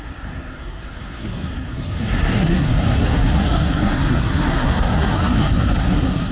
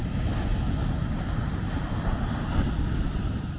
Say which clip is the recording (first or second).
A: second